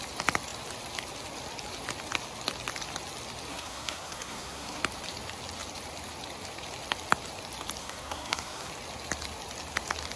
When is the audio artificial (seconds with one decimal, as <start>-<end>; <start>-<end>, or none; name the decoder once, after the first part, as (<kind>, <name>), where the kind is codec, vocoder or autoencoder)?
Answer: 3.5-4.8 (codec, SNAC); 7.8-8.7